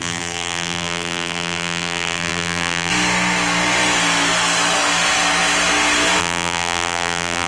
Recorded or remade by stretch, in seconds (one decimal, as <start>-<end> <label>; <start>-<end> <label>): 0.0-2.9 remade; 2.9-6.2 recorded; 6.2-7.5 remade